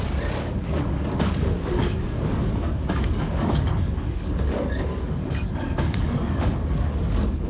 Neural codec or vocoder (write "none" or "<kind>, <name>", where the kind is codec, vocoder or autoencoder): codec, DAC